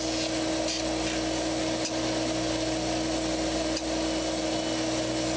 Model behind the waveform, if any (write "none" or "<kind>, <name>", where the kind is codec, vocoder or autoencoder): none